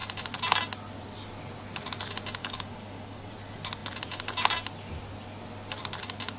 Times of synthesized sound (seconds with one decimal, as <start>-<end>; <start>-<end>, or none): 2.4-3.3